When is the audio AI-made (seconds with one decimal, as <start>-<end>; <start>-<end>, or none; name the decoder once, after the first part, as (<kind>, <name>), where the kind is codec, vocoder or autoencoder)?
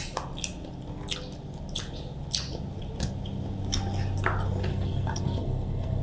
4.7-6.0 (codec, SNAC)